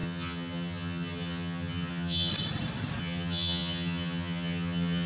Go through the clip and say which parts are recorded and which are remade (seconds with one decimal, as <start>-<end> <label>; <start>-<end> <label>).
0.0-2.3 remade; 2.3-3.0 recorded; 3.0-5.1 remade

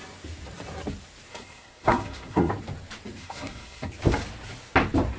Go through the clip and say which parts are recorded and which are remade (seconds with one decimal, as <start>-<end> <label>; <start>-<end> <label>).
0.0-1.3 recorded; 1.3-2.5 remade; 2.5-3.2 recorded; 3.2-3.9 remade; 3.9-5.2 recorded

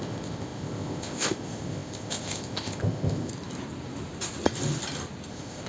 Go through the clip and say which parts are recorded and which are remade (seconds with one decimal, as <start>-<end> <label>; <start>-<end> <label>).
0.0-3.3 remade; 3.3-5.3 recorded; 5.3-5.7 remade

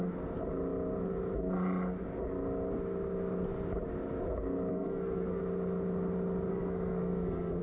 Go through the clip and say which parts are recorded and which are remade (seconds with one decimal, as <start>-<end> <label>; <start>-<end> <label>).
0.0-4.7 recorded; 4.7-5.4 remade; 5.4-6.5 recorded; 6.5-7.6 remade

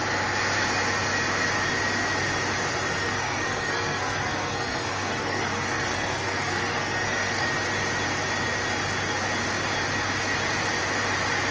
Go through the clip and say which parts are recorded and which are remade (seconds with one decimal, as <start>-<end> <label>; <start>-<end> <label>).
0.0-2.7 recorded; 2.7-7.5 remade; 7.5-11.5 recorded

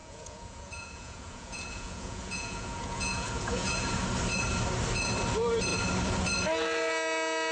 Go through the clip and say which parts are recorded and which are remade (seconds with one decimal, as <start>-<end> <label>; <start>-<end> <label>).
0.0-3.9 remade; 3.9-7.5 recorded

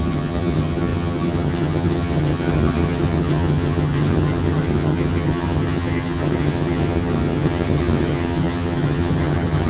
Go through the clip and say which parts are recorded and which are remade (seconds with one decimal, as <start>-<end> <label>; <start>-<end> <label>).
0.0-9.7 remade